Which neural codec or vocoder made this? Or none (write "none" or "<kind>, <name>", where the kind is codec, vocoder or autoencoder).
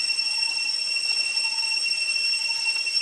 none